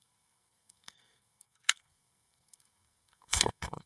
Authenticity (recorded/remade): remade